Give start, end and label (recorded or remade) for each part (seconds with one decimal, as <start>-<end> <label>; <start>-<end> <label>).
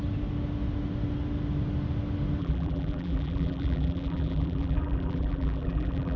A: 0.0-2.4 recorded; 2.4-6.2 remade